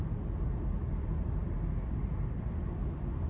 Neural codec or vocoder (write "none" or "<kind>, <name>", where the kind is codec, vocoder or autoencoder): none